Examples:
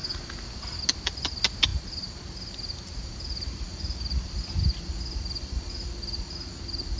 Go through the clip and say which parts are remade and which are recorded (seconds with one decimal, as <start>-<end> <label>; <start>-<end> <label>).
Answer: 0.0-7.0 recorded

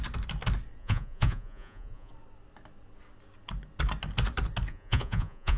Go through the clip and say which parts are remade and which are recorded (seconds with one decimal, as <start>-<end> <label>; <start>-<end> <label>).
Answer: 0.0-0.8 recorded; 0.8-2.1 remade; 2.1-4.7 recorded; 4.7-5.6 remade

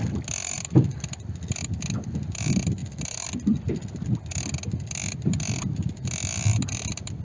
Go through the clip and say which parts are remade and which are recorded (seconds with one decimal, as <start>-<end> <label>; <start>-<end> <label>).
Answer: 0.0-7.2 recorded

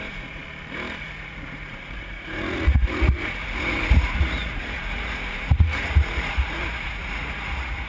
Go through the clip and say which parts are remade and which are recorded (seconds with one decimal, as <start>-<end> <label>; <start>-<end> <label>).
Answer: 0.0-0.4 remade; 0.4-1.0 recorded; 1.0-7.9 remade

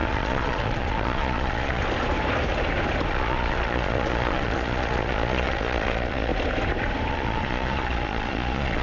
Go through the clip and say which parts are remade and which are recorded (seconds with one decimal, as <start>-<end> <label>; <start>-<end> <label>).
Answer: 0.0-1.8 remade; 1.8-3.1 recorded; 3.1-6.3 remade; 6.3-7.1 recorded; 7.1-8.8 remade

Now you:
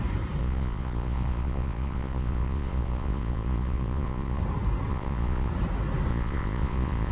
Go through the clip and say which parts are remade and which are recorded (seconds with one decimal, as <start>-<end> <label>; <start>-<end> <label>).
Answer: 0.0-0.4 recorded; 0.4-4.4 remade; 4.4-4.9 recorded; 4.9-5.5 remade; 5.5-6.1 recorded; 6.1-7.1 remade

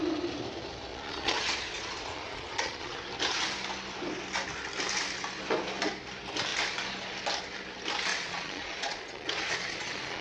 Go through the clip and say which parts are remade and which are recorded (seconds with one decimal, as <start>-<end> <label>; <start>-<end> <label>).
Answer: 0.0-0.9 recorded; 0.9-3.0 remade; 3.0-8.1 recorded; 8.1-10.2 remade